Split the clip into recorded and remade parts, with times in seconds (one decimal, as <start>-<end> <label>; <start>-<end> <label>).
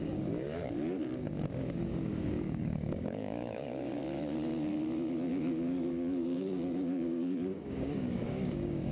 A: 0.0-4.0 remade; 4.0-5.3 recorded; 5.3-8.9 remade